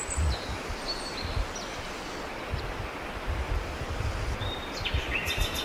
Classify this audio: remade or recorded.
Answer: recorded